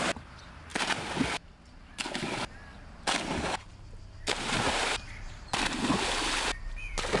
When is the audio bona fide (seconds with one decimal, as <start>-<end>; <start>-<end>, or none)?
0.0-7.2